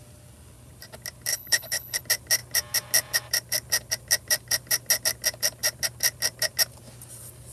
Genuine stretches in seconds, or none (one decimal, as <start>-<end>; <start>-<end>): 0.0-1.3; 2.0-7.5